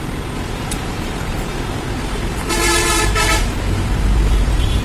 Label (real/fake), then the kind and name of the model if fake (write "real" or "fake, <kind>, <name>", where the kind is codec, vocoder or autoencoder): fake, vocoder, BigVGAN v2